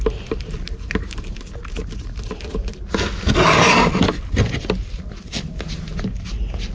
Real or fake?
real